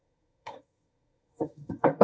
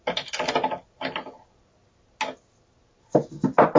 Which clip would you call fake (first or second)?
first